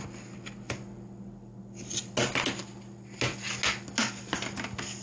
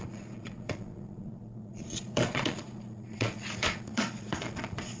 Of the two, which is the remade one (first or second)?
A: second